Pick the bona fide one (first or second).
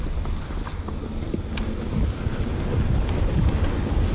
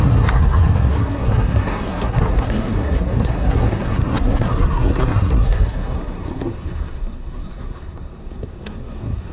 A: first